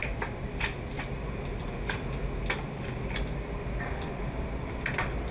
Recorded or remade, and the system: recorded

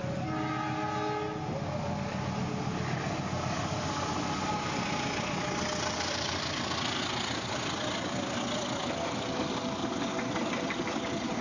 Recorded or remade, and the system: recorded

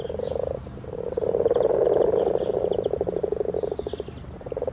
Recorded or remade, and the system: recorded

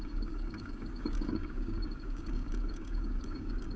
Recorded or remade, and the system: remade, codec, DAC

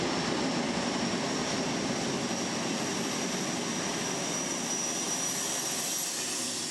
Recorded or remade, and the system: recorded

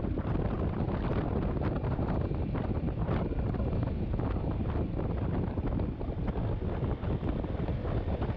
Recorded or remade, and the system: recorded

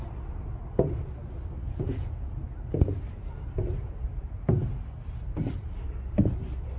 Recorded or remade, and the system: recorded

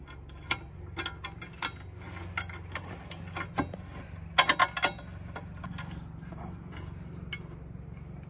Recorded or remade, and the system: recorded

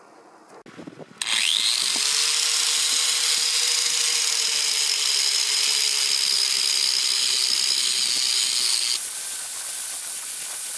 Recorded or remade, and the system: recorded